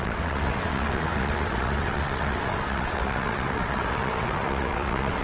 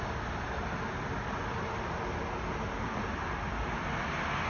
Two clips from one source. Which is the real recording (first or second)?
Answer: second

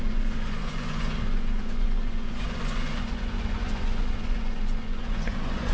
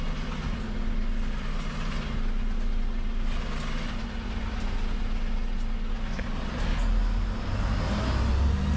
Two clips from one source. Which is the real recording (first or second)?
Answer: second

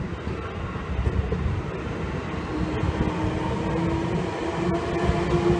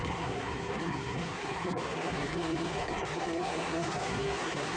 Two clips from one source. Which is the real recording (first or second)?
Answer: first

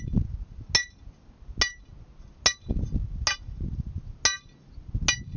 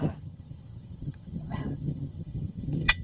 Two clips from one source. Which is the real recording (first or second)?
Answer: first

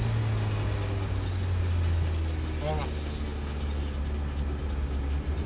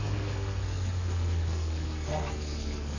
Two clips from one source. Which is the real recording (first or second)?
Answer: first